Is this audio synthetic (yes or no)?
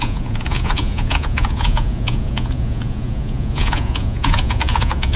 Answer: yes